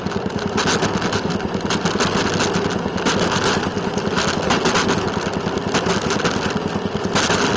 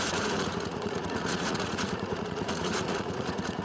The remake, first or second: second